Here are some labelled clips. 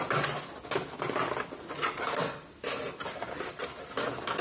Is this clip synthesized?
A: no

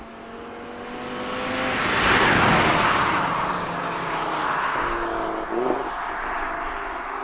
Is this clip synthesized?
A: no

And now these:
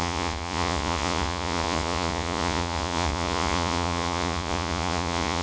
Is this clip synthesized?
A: yes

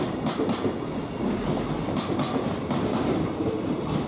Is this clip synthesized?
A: no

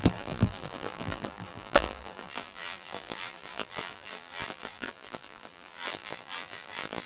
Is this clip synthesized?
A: yes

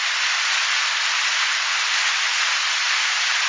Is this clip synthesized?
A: no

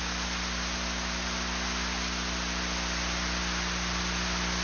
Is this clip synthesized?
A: no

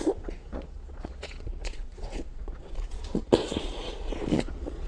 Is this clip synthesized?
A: yes